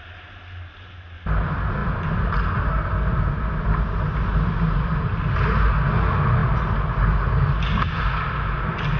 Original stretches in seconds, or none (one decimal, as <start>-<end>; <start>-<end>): 0.0-9.0